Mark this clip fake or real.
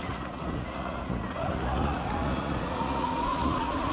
fake